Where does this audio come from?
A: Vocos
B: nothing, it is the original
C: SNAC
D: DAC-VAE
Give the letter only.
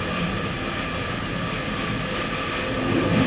B